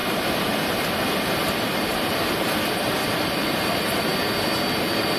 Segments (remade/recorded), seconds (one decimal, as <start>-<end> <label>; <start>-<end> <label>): 0.0-4.1 remade; 4.1-4.8 recorded; 4.8-5.2 remade